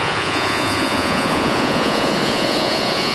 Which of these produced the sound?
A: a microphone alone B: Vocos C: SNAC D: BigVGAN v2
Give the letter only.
B